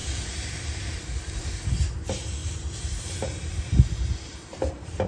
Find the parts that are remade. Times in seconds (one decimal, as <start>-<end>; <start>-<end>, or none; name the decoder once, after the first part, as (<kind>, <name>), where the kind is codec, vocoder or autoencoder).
0.0-1.0 (vocoder, BigVGAN v2); 2.4-5.1